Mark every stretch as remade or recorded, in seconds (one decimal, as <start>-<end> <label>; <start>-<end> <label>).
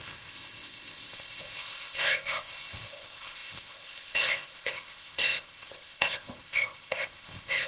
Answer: 0.0-7.7 remade